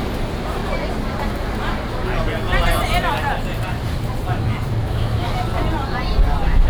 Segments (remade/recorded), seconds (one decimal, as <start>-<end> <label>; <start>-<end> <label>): 0.0-4.8 recorded; 4.8-5.3 remade; 5.3-6.7 recorded